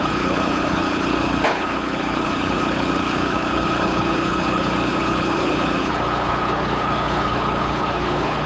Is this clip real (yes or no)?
no